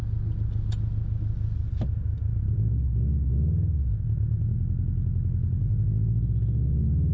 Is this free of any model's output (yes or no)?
yes